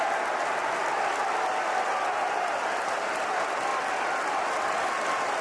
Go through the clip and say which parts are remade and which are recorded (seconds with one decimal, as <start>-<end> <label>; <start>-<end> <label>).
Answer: 0.0-5.4 recorded